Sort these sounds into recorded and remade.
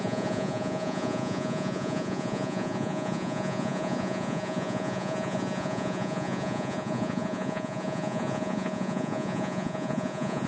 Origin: remade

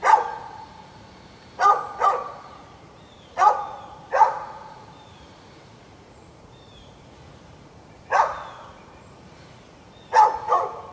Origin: remade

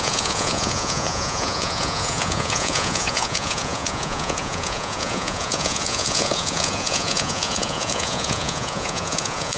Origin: remade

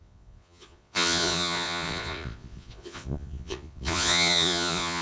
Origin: remade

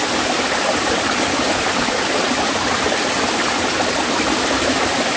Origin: recorded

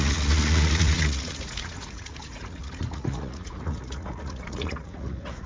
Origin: remade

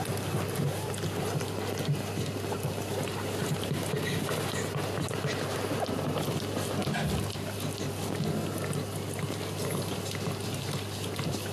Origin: recorded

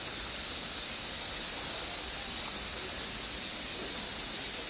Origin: recorded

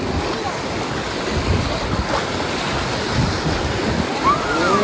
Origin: recorded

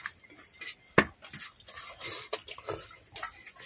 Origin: recorded